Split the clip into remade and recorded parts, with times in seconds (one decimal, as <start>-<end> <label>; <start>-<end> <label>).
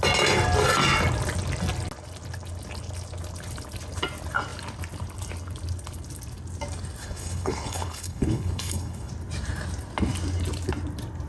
0.0-7.0 recorded; 7.0-9.1 remade; 9.1-11.3 recorded